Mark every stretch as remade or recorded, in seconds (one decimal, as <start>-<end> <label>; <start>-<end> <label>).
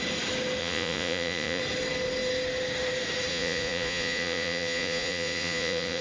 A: 0.0-0.6 recorded; 0.6-1.6 remade; 1.6-3.3 recorded; 3.3-6.0 remade